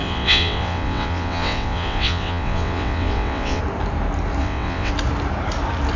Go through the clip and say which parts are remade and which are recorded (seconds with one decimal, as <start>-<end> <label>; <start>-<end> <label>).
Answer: 0.0-3.6 remade; 3.6-4.4 recorded; 4.4-4.9 remade; 4.9-6.0 recorded